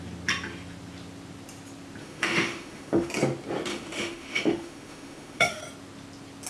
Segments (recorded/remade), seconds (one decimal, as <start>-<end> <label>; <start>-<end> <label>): 0.0-2.0 recorded; 2.0-3.1 remade; 3.1-3.7 recorded; 3.7-5.6 remade; 5.6-6.5 recorded